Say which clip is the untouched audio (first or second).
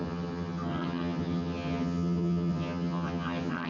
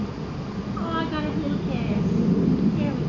second